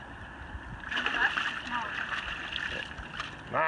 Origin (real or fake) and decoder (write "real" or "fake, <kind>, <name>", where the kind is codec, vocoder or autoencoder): real